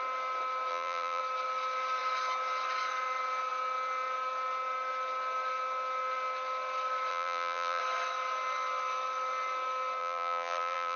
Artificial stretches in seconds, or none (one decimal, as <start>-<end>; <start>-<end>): 0.7-1.2; 7.1-7.8; 10.0-11.0